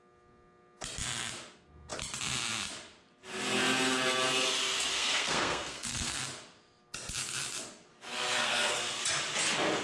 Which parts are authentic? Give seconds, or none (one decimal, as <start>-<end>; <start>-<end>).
0.0-4.9; 6.2-8.1; 9.0-9.8